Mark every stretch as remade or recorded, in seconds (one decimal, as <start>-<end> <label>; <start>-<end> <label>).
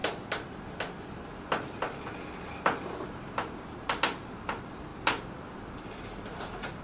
0.0-6.8 recorded